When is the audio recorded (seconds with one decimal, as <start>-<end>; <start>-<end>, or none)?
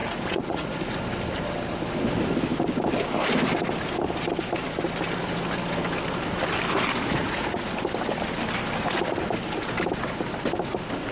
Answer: 1.0-7.2; 7.7-11.1